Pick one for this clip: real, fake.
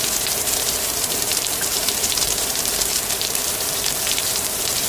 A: fake